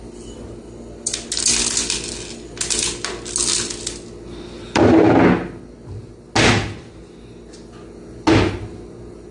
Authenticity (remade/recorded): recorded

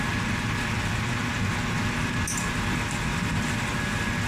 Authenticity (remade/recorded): recorded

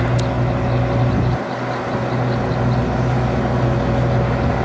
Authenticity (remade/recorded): recorded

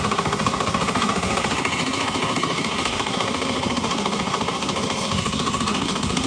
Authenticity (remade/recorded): remade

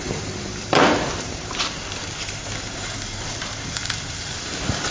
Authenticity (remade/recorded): remade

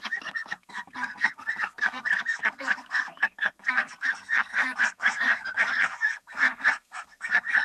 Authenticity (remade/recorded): remade